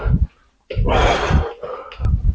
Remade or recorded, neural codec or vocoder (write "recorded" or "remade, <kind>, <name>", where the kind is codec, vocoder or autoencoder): recorded